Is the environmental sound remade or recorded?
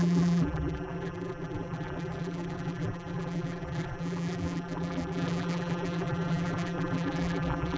remade